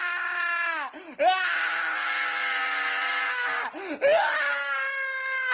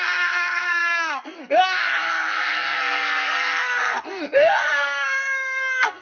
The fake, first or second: second